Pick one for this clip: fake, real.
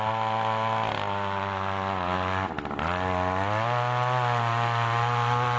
real